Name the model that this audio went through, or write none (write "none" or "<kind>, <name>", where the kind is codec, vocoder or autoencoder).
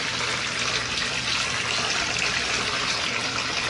none